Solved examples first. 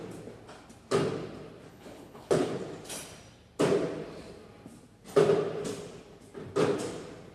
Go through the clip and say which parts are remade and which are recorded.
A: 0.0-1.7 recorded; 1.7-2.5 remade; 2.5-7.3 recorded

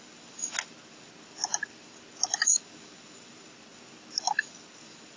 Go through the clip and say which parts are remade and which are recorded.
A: 0.0-5.2 recorded